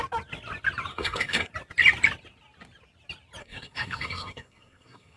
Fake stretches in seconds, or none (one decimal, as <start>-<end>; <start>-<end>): 0.9-1.5; 3.4-5.2